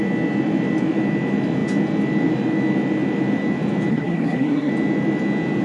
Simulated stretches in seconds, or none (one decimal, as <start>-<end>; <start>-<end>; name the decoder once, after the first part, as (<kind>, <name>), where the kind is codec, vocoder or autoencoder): 3.9-4.7 (codec, SNAC)